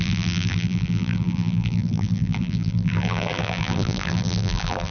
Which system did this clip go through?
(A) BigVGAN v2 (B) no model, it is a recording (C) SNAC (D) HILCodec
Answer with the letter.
A